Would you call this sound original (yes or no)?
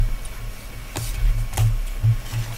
yes